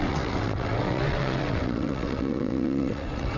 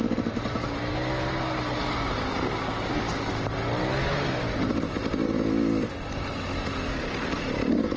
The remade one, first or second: first